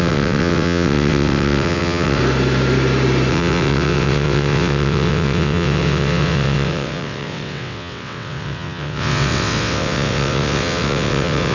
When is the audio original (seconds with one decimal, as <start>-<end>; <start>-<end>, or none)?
2.2-3.3